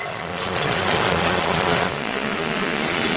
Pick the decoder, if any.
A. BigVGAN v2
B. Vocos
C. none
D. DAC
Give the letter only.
B